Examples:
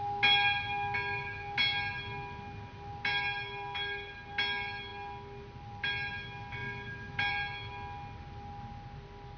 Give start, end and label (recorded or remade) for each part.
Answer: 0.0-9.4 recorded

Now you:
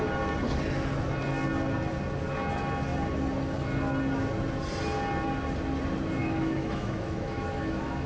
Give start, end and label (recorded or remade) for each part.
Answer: 0.0-6.2 recorded; 6.2-8.1 remade

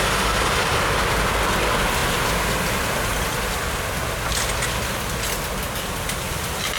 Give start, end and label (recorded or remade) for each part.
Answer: 0.0-6.8 recorded